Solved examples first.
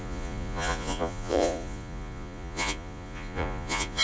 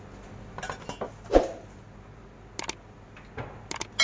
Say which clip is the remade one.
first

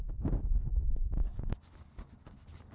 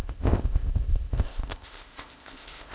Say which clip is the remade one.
second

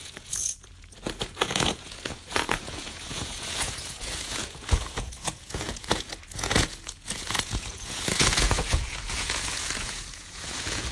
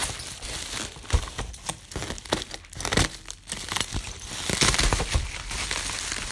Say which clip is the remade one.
first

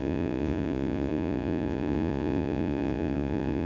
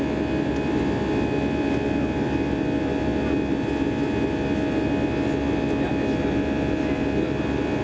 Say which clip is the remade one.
first